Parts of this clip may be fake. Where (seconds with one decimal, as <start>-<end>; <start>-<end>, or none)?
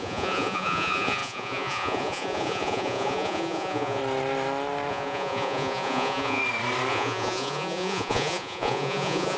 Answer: 0.0-4.0; 4.9-6.4; 6.9-9.4